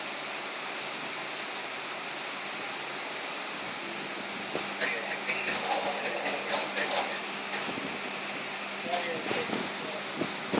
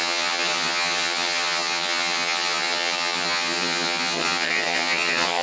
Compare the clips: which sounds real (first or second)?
first